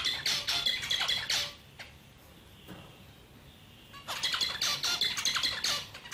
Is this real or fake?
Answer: real